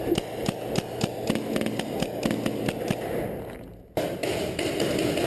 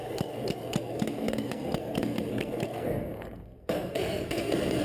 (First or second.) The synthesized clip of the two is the second